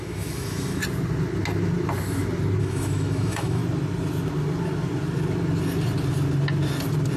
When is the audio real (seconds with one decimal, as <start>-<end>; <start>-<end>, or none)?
0.8-2.6; 3.6-7.2